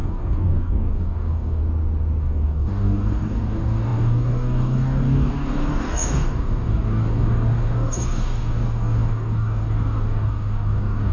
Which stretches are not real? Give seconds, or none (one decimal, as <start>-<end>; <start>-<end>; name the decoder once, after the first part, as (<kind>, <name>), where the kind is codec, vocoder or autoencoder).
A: 0.0-1.6 (codec, DAC); 2.2-11.1